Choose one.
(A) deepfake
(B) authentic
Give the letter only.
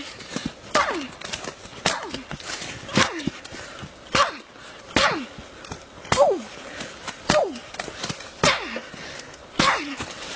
A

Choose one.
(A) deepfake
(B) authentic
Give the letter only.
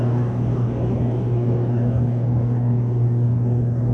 A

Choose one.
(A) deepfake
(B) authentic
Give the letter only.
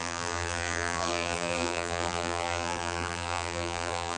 A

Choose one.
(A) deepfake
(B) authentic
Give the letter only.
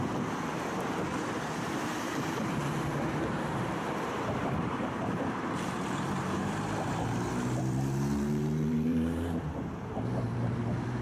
A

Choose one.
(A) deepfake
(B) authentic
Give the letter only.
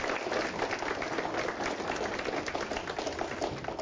B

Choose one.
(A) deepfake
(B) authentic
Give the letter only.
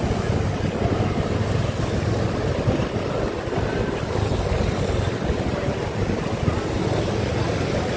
B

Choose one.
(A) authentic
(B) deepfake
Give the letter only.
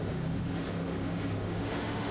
B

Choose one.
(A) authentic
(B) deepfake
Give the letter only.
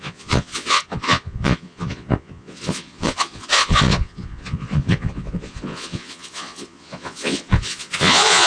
B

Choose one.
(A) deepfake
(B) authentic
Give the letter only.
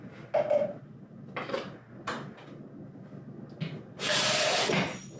B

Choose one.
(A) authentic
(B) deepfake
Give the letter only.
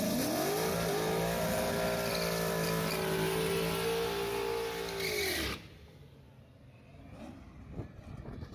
A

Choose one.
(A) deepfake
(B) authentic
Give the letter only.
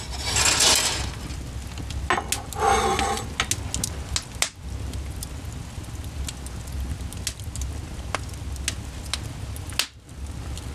B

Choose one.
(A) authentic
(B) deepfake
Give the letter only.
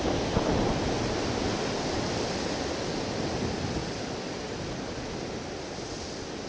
A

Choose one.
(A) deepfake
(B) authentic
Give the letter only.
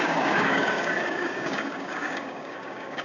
A